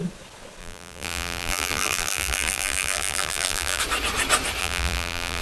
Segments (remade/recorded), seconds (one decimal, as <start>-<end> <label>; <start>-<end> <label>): 0.0-0.6 recorded; 0.6-3.8 remade; 3.8-4.6 recorded; 4.6-5.4 remade